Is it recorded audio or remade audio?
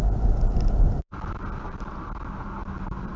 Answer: recorded